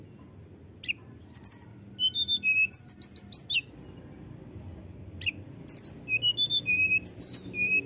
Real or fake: real